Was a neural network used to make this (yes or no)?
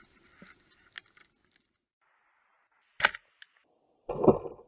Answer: no